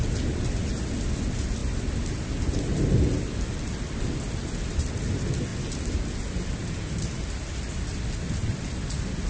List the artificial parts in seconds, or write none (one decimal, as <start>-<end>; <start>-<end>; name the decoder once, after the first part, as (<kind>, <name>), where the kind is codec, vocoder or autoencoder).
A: none